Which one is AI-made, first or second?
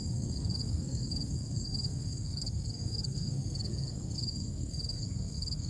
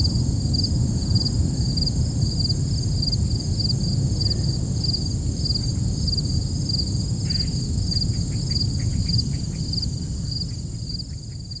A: first